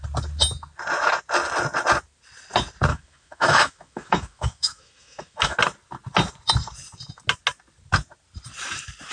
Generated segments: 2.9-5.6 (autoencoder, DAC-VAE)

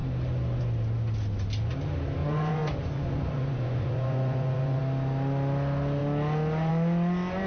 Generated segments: 2.2-4.8 (vocoder, Vocos)

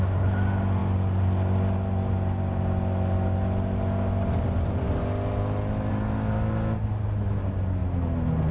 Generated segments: none

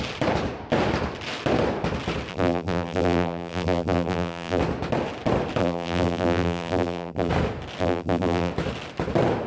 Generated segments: 2.3-4.6 (vocoder, BigVGAN v2); 5.6-7.3; 7.8-8.5

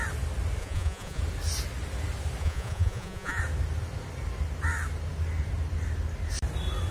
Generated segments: 0.6-1.2 (vocoder, Vocos); 2.4-3.4